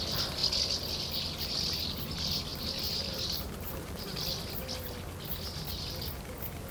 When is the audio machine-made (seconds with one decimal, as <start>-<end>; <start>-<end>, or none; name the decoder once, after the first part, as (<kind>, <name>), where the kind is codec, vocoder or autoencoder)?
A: 2.5-4.2 (vocoder, BigVGAN v2)